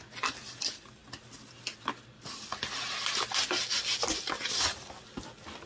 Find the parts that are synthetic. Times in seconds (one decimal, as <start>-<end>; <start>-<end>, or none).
0.0-1.0; 4.4-5.7